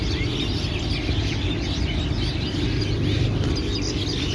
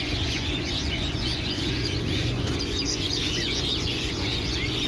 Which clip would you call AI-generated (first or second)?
second